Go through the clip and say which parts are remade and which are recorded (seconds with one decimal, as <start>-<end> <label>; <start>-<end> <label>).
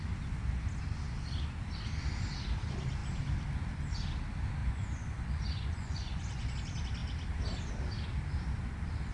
0.0-4.6 recorded; 4.6-6.5 remade; 6.5-9.1 recorded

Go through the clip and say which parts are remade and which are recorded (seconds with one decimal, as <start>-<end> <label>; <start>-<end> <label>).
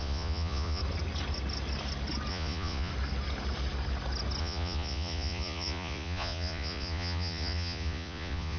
0.0-0.8 remade; 0.8-2.3 recorded; 2.3-2.9 remade; 2.9-4.4 recorded; 4.4-8.6 remade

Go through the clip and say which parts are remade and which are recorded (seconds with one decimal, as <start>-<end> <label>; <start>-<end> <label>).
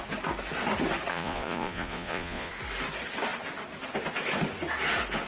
0.0-1.1 recorded; 1.1-2.5 remade; 2.5-5.3 recorded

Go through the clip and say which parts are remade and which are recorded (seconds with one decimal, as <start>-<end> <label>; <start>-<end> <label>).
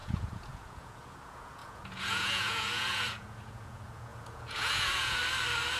0.0-5.2 remade; 5.2-5.8 recorded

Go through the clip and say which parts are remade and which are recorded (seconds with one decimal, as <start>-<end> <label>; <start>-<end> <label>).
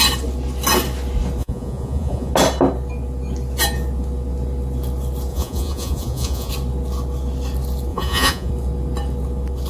0.0-1.4 recorded; 1.4-2.3 remade; 2.3-5.3 recorded; 5.3-6.5 remade; 6.5-7.9 recorded; 7.9-8.5 remade; 8.5-9.7 recorded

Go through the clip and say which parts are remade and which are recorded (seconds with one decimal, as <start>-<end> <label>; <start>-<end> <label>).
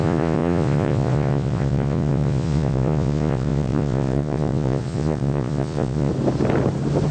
0.0-6.1 remade; 6.1-7.1 recorded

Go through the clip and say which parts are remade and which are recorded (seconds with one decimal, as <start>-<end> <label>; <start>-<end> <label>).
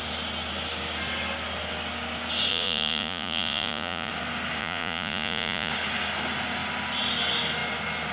0.0-2.5 recorded; 2.5-4.1 remade; 4.1-4.6 recorded; 4.6-5.7 remade; 5.7-8.1 recorded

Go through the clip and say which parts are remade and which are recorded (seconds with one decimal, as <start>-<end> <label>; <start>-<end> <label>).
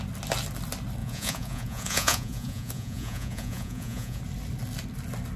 0.0-1.0 recorded; 1.0-4.2 remade; 4.2-5.4 recorded